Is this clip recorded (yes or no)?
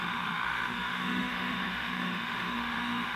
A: no